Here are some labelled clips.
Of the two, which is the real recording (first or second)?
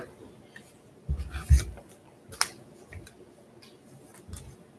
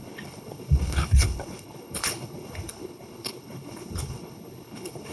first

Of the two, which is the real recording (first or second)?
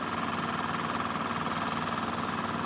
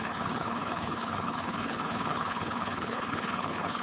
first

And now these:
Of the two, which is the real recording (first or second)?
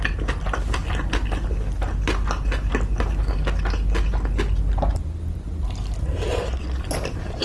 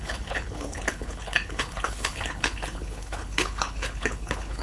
first